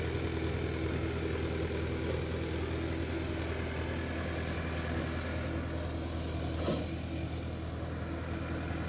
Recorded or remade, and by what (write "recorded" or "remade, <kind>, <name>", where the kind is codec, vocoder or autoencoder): recorded